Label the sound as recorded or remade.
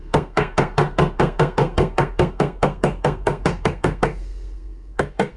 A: remade